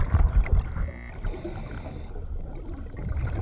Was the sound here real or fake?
real